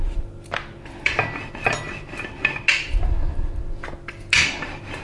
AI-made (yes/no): no